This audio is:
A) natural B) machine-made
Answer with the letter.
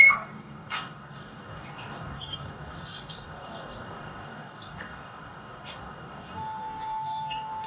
B